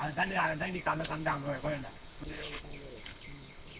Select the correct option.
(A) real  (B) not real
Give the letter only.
B